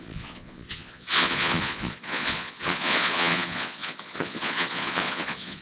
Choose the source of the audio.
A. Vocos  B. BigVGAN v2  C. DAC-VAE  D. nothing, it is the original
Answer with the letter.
A